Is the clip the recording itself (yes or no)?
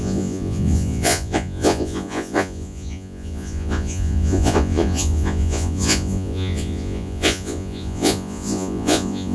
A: no